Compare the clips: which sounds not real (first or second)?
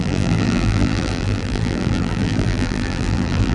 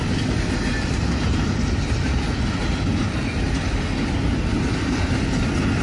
first